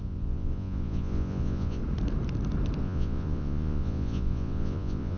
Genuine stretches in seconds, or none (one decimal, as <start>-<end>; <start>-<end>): 1.8-2.8